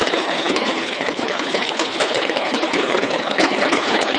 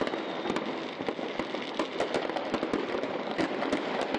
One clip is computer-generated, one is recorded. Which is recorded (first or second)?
second